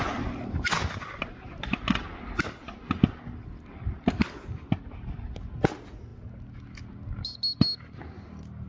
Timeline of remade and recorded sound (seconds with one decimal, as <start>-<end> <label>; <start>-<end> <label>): 0.0-8.7 recorded